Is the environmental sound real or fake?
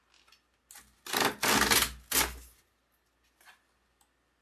real